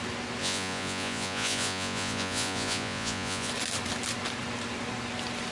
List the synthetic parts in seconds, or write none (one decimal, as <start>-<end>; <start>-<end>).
0.4-3.5